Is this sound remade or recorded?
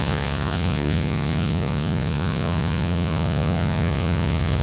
remade